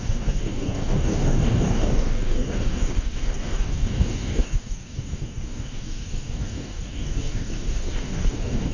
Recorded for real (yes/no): no